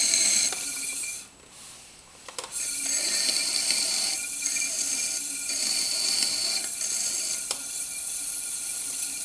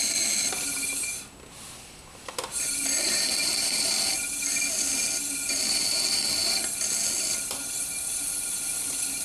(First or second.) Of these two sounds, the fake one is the first